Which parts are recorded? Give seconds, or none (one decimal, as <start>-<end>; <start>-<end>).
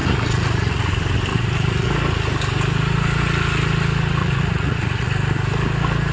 0.8-1.3; 1.9-4.2; 5.1-6.1